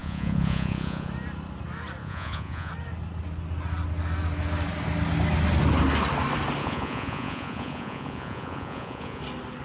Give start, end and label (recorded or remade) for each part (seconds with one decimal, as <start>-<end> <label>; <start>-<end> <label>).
0.0-1.1 remade; 1.1-2.0 recorded; 2.0-2.7 remade; 2.7-6.6 recorded; 6.6-9.2 remade; 9.2-9.6 recorded

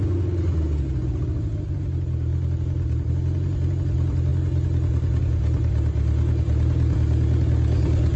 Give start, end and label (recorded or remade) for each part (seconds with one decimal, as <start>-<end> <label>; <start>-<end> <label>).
0.0-8.2 recorded

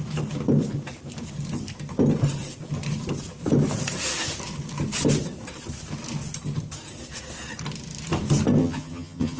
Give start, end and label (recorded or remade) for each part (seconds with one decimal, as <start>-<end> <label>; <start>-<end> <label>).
0.0-8.6 recorded; 8.6-9.4 remade

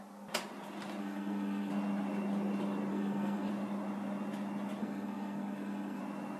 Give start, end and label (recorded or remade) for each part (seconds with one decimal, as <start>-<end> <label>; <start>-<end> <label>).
0.0-1.0 recorded; 1.0-1.7 remade; 1.7-2.9 recorded; 2.9-3.5 remade; 3.5-4.8 recorded; 4.8-6.0 remade; 6.0-6.4 recorded

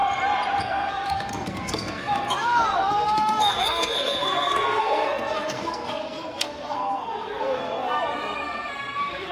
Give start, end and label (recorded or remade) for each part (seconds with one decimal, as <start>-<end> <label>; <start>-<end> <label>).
0.0-0.6 recorded; 0.6-9.3 remade

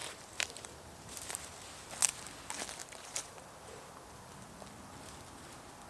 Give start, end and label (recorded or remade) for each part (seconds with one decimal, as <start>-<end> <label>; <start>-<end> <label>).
0.0-1.4 remade; 1.4-2.8 recorded; 2.8-4.1 remade; 4.1-5.9 recorded

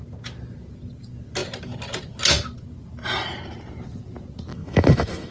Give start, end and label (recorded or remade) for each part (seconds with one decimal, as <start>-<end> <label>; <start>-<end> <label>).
0.0-4.5 recorded; 4.5-5.3 remade

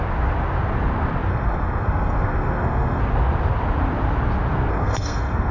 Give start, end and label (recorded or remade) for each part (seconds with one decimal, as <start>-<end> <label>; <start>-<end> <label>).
0.0-1.3 recorded; 1.3-3.0 remade; 3.0-4.7 recorded; 4.7-5.5 remade